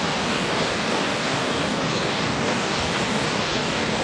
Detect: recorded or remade remade